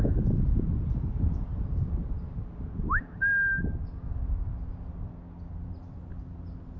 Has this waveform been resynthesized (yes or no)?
no